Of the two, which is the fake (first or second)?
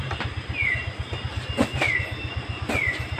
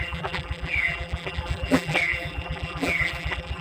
second